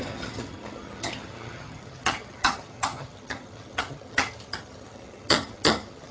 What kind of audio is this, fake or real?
fake